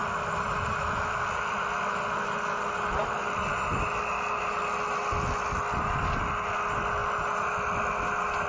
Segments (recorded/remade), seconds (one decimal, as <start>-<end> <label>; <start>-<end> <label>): 0.0-1.9 remade; 1.9-8.5 recorded